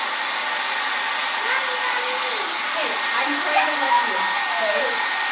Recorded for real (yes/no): yes